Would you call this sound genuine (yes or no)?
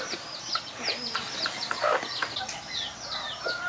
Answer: yes